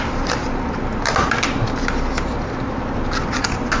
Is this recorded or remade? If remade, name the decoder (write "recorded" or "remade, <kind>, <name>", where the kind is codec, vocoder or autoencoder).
recorded